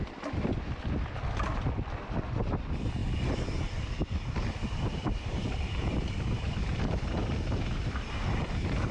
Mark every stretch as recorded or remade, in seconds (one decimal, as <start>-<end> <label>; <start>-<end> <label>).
0.0-7.2 remade; 7.2-8.9 recorded